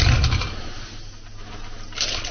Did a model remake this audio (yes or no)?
no